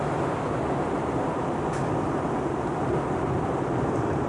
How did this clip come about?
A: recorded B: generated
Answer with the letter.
A